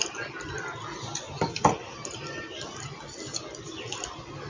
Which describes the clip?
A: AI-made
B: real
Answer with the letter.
B